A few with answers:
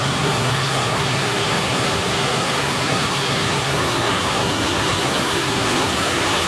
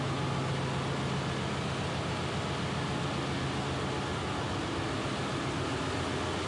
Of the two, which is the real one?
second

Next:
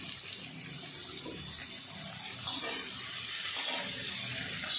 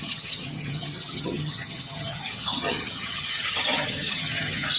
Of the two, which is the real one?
first